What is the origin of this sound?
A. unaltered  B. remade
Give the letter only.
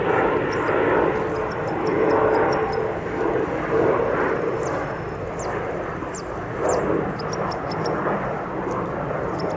A